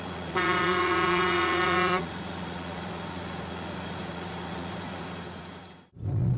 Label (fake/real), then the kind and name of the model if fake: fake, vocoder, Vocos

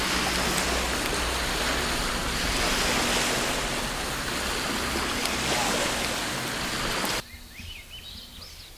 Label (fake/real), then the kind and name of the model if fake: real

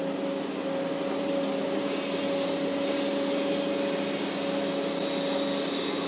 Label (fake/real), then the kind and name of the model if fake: real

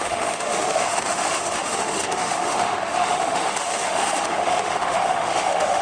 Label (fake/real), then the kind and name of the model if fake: fake, autoencoder, DAC-VAE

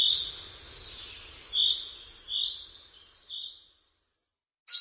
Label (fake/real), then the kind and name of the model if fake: real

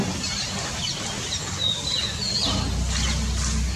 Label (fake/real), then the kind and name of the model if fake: real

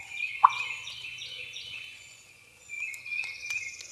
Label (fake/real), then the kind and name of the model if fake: fake, vocoder, Vocos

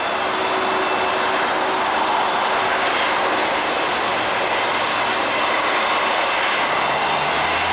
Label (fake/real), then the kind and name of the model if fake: real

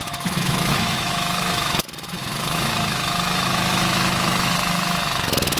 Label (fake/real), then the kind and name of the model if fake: fake, autoencoder, DAC-VAE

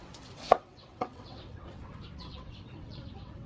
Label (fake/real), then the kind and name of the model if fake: fake, vocoder, WaveNeXt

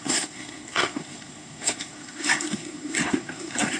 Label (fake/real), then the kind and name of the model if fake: fake, codec, SNAC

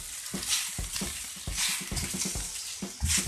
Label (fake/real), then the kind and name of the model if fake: real